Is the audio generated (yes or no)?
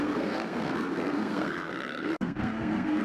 yes